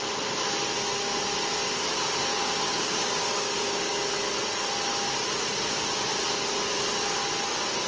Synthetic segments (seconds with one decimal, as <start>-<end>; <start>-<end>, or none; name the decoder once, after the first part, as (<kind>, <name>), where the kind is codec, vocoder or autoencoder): 2.3-3.9 (codec, DAC)